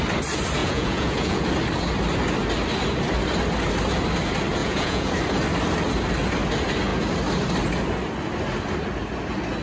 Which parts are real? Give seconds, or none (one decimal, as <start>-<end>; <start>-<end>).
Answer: 0.0-0.6; 1.5-4.6; 5.1-9.6